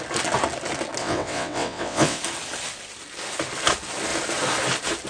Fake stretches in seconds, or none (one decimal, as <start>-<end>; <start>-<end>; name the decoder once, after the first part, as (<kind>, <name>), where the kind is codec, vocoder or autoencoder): 1.0-2.2 (vocoder, WaveNeXt)